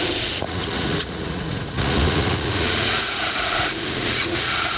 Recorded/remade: remade